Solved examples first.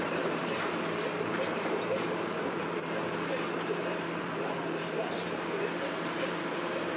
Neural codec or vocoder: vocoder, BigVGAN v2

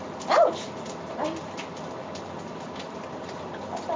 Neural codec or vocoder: none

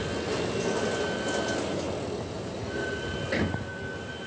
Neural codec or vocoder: none